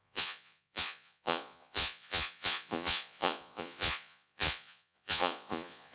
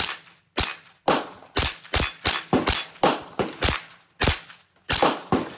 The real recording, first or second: second